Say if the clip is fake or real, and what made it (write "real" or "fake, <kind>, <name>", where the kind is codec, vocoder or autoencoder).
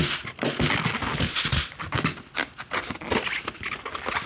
real